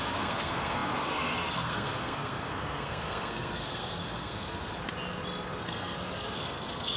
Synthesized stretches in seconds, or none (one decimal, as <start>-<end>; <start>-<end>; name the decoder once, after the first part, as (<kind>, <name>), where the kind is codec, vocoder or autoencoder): 0.0-4.7 (codec, SNAC); 5.6-7.0